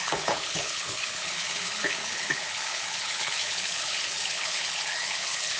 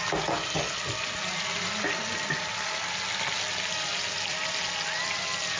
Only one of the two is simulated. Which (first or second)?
first